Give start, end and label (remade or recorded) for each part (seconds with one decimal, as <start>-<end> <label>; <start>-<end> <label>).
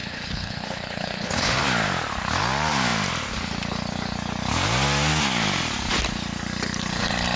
0.0-1.6 remade; 1.6-7.4 recorded